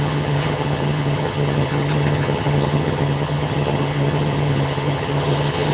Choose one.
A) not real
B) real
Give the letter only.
A